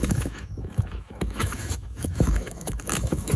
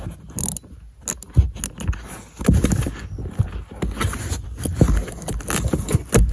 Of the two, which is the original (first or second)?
second